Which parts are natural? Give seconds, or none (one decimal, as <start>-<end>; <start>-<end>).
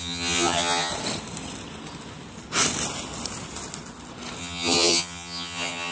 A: 0.9-4.4